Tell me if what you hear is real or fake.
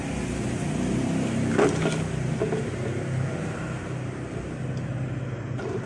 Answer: real